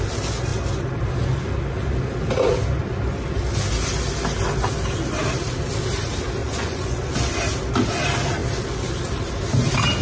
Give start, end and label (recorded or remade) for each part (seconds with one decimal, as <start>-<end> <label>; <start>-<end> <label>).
0.0-6.4 recorded; 6.4-7.0 remade; 7.0-10.0 recorded